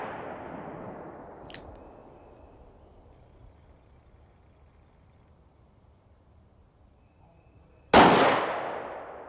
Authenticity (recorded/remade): recorded